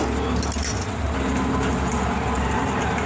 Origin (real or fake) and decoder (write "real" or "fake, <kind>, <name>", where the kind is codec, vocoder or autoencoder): real